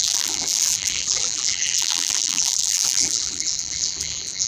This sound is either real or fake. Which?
fake